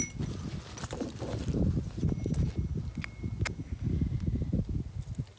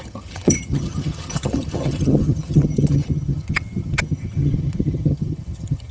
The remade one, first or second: second